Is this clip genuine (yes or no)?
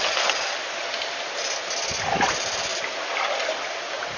yes